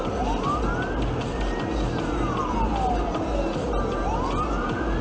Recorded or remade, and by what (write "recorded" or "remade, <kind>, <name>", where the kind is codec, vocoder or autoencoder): recorded